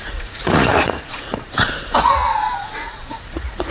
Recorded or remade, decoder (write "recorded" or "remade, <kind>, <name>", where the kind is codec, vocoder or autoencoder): remade, vocoder, Vocos